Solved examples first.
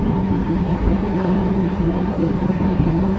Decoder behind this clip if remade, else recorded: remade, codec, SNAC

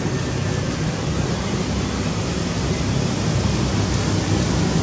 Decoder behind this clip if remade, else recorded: recorded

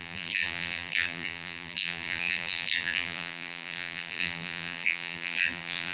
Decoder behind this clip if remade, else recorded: remade, vocoder, BigVGAN v2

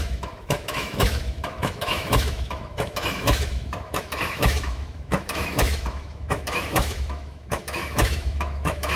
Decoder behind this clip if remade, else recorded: remade, autoencoder, DAC-VAE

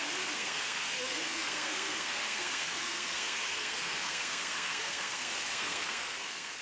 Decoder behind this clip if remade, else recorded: remade, codec, SNAC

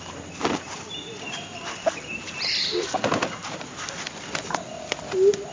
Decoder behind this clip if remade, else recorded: recorded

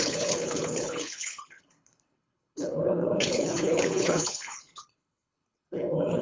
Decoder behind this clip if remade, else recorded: remade, codec, HILCodec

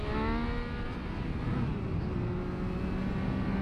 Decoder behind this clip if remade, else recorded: recorded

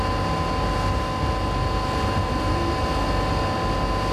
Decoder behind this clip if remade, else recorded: recorded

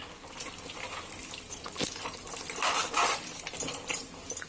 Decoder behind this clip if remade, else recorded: recorded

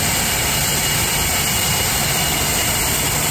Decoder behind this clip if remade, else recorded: recorded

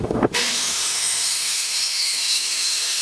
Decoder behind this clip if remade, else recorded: remade, autoencoder, DAC-VAE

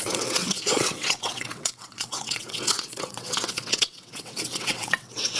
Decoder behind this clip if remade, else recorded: remade, vocoder, WaveNeXt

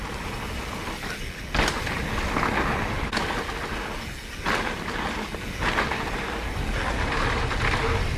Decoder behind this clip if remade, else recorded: recorded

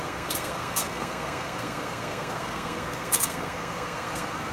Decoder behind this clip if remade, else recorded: remade, codec, SNAC